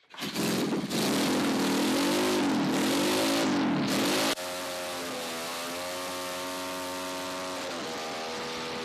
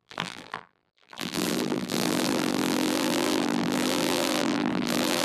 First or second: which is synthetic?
second